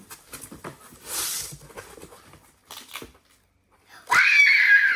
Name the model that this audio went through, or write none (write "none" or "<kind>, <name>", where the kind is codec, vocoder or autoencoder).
none